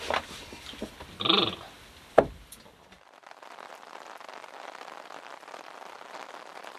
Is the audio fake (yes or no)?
no